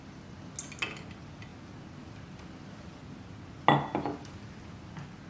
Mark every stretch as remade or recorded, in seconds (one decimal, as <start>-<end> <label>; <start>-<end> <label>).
0.0-5.3 recorded